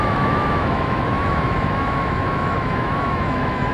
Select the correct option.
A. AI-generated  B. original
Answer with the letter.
A